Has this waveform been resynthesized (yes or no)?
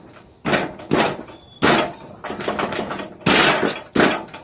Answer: no